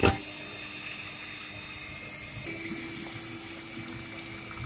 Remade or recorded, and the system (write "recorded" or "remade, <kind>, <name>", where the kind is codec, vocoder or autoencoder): recorded